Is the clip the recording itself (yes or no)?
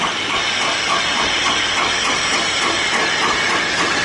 yes